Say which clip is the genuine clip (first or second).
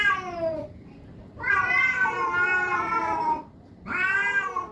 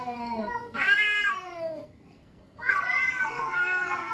first